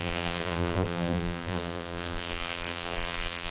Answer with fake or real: fake